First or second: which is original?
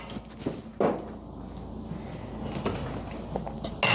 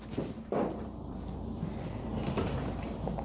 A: first